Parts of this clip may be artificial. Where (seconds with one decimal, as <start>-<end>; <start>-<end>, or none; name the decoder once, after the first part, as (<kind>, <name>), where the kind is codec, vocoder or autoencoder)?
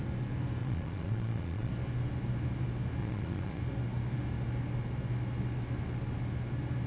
0.6-1.7 (vocoder, Vocos); 3.0-3.6